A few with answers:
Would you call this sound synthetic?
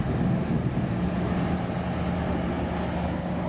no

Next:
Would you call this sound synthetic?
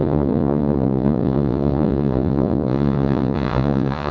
yes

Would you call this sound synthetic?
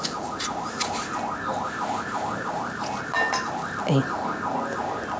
no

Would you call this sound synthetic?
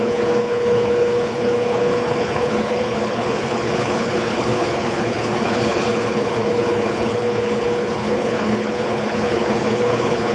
yes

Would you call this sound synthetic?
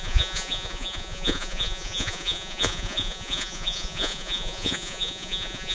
yes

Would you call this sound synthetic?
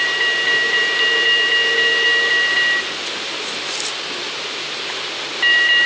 no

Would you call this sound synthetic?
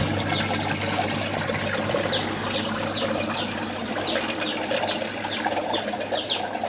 no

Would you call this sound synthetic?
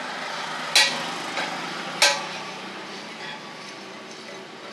no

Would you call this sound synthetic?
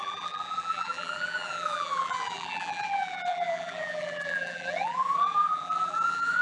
yes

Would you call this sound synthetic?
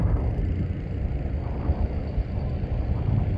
no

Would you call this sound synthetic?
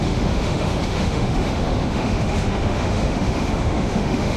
yes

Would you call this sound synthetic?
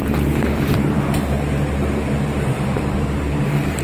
yes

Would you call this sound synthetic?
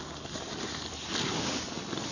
no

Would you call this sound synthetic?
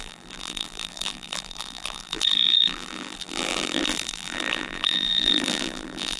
yes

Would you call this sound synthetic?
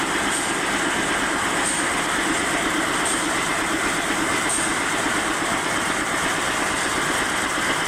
no